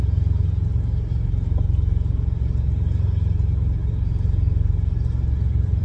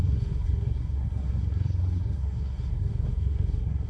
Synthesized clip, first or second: second